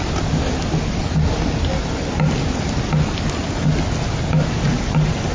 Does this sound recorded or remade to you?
recorded